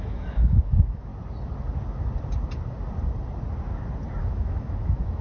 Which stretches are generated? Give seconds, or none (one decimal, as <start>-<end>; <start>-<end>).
0.0-1.1; 4.2-5.2